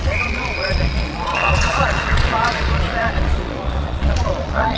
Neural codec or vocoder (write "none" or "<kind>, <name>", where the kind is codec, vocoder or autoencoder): vocoder, Vocos